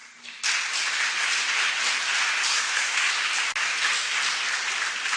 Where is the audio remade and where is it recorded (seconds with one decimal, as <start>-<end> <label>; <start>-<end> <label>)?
0.0-2.5 recorded; 2.5-3.1 remade; 3.1-5.2 recorded